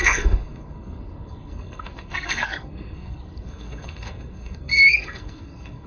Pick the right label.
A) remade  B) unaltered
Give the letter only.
A